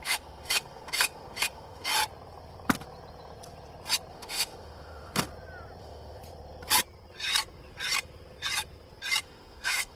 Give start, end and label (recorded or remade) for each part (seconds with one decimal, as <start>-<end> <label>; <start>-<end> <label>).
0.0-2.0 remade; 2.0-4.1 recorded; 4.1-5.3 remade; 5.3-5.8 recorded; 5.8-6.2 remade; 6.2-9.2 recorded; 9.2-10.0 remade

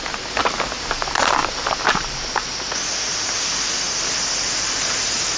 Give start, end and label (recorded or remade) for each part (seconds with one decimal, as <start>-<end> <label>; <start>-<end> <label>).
0.0-1.4 remade; 1.4-4.1 recorded; 4.1-5.4 remade

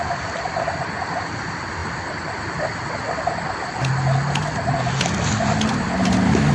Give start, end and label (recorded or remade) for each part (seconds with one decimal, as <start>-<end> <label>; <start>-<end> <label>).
0.0-6.5 recorded

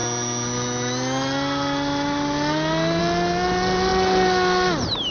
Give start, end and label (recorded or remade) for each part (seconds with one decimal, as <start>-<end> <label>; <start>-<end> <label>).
0.0-5.1 recorded

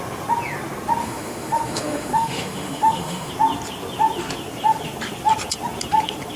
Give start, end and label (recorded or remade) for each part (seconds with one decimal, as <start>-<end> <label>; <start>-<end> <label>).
0.0-1.0 recorded; 1.0-3.3 remade; 3.3-6.4 recorded

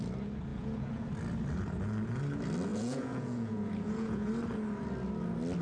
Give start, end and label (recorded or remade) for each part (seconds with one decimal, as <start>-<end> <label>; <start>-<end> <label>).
0.0-0.5 recorded; 0.5-1.1 remade; 1.1-2.7 recorded; 2.7-4.3 remade; 4.3-5.6 recorded

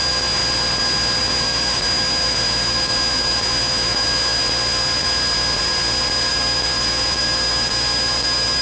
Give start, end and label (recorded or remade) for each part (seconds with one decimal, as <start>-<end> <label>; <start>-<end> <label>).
0.0-0.4 remade; 0.4-1.2 recorded; 1.2-4.4 remade; 4.4-6.3 recorded; 6.3-8.6 remade

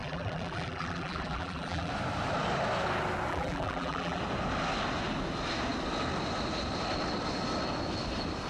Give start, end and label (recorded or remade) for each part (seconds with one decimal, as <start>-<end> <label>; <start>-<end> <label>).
0.0-1.9 remade; 1.9-3.3 recorded; 3.3-4.2 remade; 4.2-8.5 recorded